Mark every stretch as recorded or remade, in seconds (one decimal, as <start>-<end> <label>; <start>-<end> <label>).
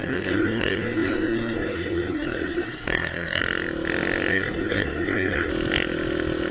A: 0.0-3.4 remade; 3.4-4.3 recorded; 4.3-5.5 remade; 5.5-6.5 recorded